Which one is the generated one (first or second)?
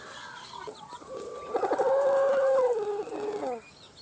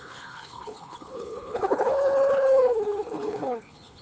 second